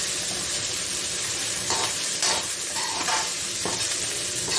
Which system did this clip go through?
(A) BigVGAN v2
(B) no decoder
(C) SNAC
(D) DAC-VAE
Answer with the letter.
A